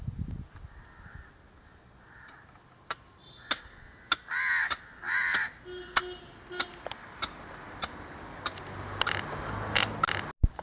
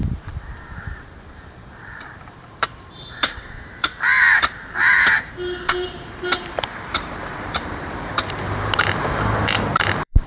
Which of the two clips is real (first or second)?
first